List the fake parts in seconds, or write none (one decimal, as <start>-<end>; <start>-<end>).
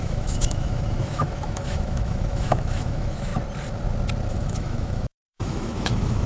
0.0-3.3; 4.3-6.3